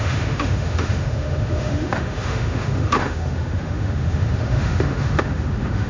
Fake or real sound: fake